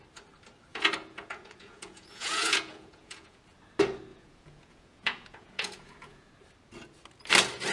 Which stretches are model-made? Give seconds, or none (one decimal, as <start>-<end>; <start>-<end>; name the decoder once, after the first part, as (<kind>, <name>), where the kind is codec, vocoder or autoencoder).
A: 0.7-3.4 (vocoder, Vocos); 4.1-6.3